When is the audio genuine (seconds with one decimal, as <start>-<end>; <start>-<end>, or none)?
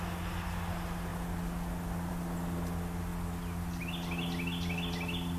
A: 0.0-5.4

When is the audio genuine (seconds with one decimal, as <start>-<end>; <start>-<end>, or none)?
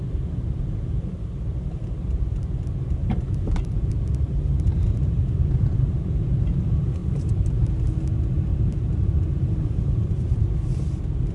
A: 0.0-3.0; 5.7-7.0; 7.8-8.5; 10.4-11.3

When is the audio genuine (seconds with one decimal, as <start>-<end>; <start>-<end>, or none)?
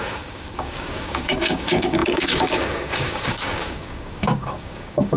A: none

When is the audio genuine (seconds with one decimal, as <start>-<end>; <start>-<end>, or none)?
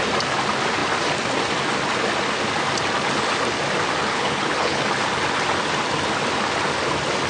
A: 0.0-4.1; 4.8-7.3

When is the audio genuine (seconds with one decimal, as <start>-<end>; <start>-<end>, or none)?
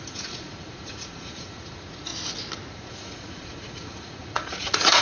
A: 2.1-2.7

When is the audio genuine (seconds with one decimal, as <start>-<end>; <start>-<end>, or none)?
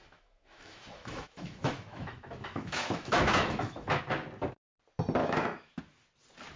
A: 4.0-5.2; 5.8-6.6